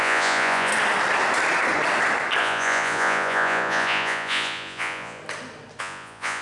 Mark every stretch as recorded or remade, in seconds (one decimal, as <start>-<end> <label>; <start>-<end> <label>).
0.0-0.7 remade; 0.7-2.4 recorded; 2.4-5.2 remade; 5.2-5.8 recorded; 5.8-6.4 remade